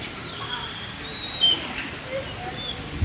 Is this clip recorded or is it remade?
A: recorded